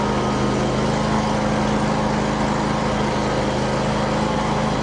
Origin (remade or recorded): recorded